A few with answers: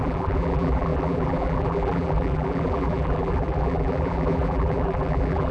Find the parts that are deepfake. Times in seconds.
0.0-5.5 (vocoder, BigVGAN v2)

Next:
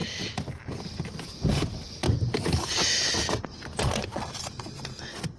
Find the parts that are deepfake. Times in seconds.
4.1-5.0 (vocoder, BigVGAN v2)

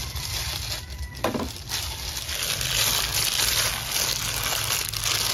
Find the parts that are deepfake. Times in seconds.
3.1-3.7 (vocoder, BigVGAN v2)

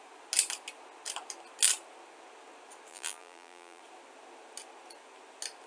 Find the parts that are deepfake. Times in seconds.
2.9-3.8 (vocoder, BigVGAN v2)